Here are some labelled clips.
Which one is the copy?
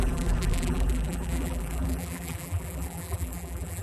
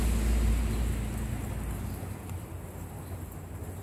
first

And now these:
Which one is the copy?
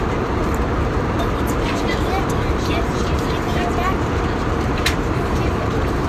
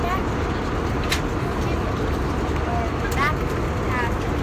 first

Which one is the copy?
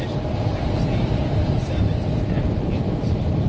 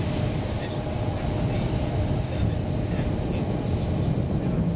first